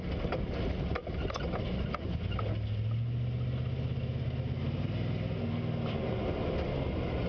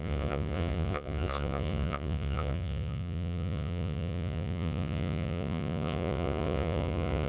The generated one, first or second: second